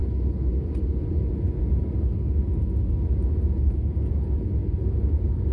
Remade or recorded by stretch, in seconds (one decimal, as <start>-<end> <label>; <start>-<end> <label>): 0.0-5.5 recorded